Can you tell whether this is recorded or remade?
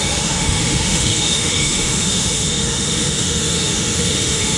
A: remade